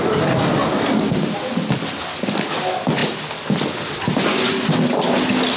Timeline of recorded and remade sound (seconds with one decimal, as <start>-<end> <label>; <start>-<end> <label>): 0.0-5.6 recorded

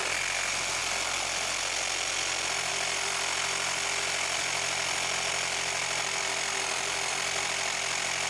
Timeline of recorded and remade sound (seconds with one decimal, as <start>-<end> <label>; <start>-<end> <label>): 0.0-8.3 recorded

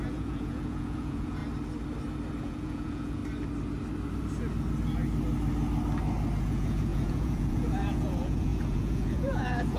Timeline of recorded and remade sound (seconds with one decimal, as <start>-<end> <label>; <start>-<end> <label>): 0.0-1.4 remade; 1.4-2.4 recorded; 2.4-3.2 remade; 3.2-6.4 recorded; 6.4-9.8 remade

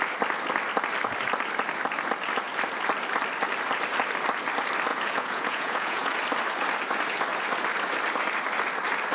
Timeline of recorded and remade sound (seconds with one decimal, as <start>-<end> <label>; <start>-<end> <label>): 0.0-4.9 recorded; 4.9-6.1 remade; 6.1-9.1 recorded

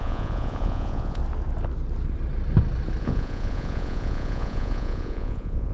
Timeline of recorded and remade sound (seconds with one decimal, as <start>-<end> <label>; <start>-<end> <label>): 0.0-1.2 remade; 1.2-3.0 recorded; 3.0-5.7 remade